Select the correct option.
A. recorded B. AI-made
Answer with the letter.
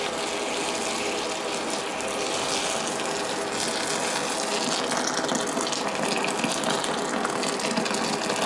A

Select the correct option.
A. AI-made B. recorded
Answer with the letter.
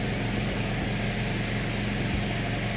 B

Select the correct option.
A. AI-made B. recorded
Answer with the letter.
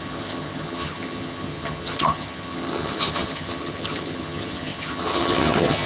A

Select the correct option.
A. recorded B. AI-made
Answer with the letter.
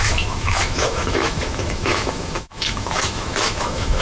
B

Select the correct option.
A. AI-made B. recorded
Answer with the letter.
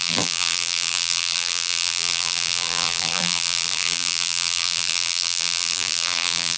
A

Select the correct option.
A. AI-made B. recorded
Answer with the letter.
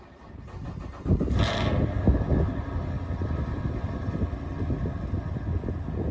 B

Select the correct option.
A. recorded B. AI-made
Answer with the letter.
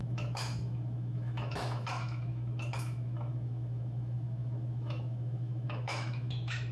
B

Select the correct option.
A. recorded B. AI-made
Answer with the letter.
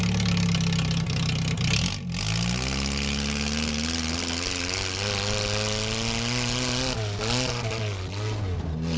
A